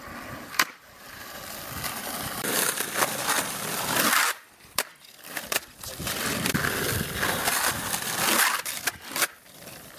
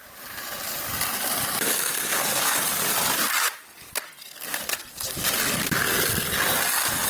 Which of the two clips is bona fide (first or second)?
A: second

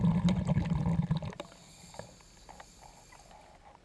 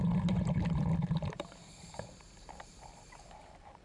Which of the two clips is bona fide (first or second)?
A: first